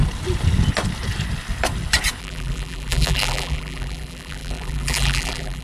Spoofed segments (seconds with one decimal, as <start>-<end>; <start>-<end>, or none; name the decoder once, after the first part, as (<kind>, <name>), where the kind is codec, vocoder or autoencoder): 2.2-5.6 (vocoder, BigVGAN v2)